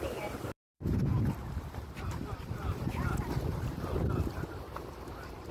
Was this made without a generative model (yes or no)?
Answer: no